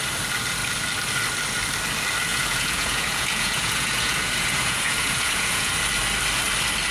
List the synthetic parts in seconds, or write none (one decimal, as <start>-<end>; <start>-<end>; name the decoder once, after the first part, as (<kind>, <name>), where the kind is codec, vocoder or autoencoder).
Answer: 2.3-5.7 (vocoder, Vocos)